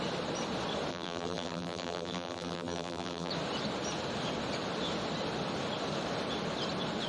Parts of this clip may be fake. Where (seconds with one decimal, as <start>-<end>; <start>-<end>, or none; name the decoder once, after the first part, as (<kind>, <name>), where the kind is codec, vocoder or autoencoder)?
0.9-3.3 (vocoder, BigVGAN v2)